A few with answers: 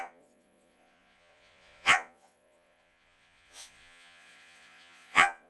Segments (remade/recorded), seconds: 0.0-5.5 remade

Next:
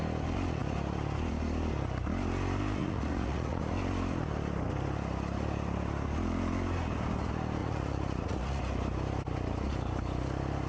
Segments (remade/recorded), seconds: 0.0-2.8 recorded; 2.8-3.6 remade; 3.6-7.6 recorded; 7.6-8.6 remade; 8.6-10.7 recorded

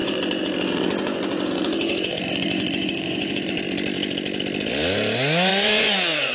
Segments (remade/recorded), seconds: 0.0-3.6 remade; 3.6-5.5 recorded; 5.5-6.3 remade

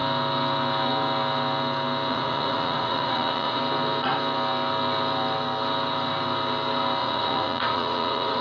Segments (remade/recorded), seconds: 0.0-2.1 recorded; 2.1-3.6 remade; 3.6-7.0 recorded; 7.0-8.4 remade

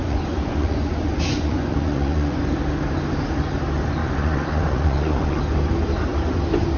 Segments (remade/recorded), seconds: 0.0-2.4 remade; 2.4-4.0 recorded; 4.0-5.4 remade; 5.4-6.8 recorded

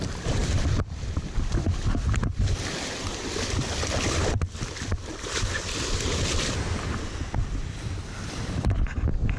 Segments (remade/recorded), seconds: 0.0-9.4 recorded

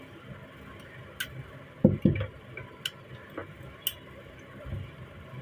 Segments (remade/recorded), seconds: 0.0-5.4 recorded

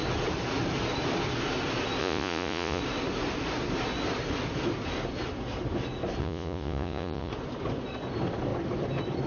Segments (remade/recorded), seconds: 0.0-2.0 recorded; 2.0-2.8 remade; 2.8-6.2 recorded; 6.2-7.3 remade; 7.3-9.3 recorded